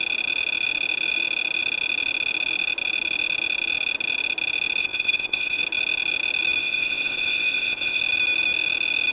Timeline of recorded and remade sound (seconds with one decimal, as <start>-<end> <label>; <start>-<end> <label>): 0.0-4.8 recorded; 4.8-5.6 remade; 5.6-6.6 recorded; 6.6-8.0 remade; 8.0-9.1 recorded